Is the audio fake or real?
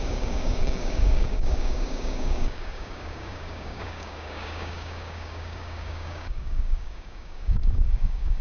fake